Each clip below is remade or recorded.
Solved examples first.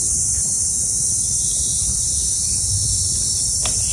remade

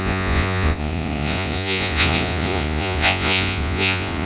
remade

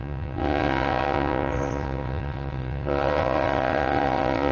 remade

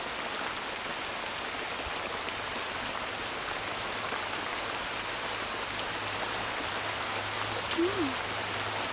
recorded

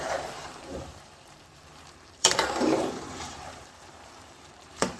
remade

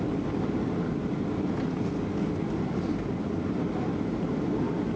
recorded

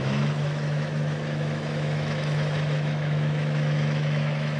remade